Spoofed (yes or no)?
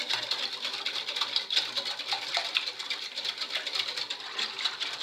no